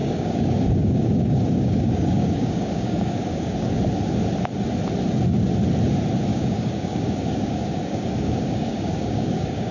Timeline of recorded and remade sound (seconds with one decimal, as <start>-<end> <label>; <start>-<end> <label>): 0.0-3.7 remade; 3.7-6.3 recorded; 6.3-9.7 remade